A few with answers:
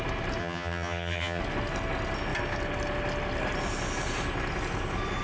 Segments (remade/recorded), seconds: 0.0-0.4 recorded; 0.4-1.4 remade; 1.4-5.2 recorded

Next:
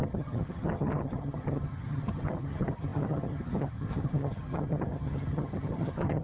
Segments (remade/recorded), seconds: 0.0-6.2 remade